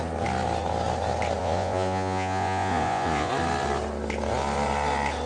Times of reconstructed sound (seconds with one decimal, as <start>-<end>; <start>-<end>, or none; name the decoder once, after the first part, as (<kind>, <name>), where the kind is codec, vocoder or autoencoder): 1.4-3.3 (vocoder, Vocos)